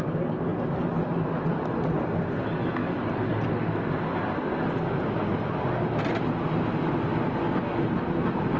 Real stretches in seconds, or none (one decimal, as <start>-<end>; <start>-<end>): 0.0-2.8; 3.5-8.6